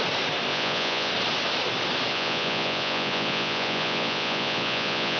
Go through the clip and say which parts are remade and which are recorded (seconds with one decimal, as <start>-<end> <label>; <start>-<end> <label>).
0.0-0.5 recorded; 0.5-1.1 remade; 1.1-2.1 recorded; 2.1-5.2 remade